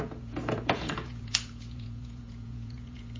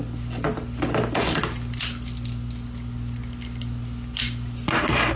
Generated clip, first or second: first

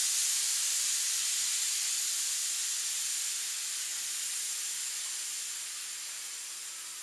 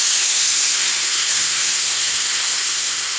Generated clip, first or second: second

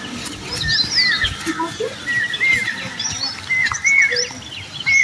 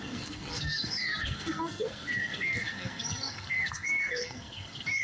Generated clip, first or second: second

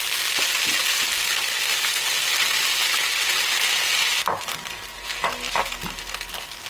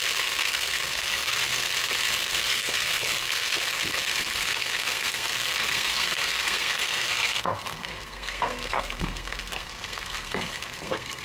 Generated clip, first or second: second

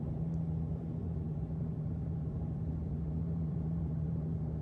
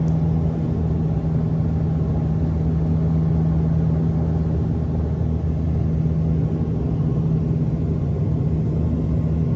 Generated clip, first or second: first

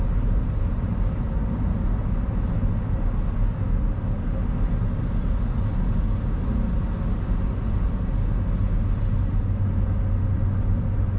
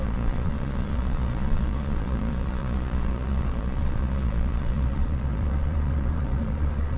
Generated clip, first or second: second